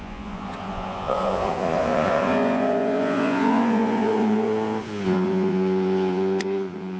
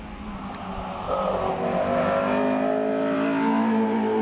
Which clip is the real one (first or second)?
second